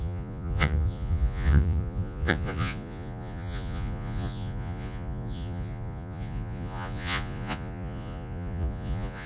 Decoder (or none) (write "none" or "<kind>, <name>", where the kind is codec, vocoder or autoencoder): vocoder, Vocos